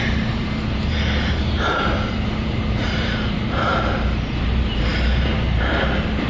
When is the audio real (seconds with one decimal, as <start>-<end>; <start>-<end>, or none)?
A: 3.7-4.4